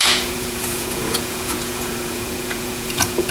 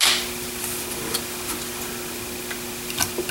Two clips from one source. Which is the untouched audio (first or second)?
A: second